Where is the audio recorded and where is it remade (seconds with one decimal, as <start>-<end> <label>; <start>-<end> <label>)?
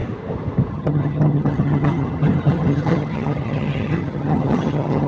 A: 0.0-0.7 recorded; 0.7-5.1 remade